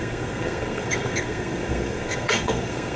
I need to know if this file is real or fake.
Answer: fake